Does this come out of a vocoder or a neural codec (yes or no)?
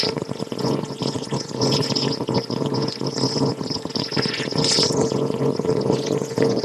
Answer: yes